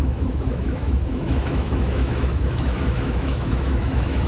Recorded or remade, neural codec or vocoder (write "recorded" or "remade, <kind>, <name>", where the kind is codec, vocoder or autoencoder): remade, autoencoder, DAC-VAE